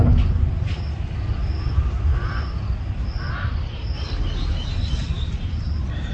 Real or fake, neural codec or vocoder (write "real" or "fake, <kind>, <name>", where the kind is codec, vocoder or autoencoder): real